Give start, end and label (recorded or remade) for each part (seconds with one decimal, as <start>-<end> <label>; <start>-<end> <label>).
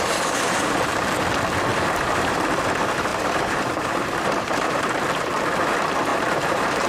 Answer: 0.0-1.7 recorded; 1.7-2.3 remade; 2.3-3.1 recorded; 3.1-4.9 remade; 4.9-6.1 recorded; 6.1-6.9 remade